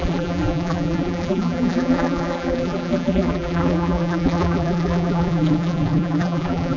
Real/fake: fake